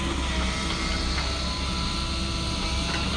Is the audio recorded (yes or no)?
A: yes